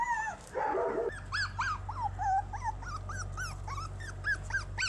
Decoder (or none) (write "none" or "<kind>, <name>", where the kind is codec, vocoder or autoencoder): none